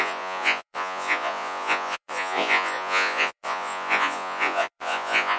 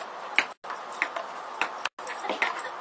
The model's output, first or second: first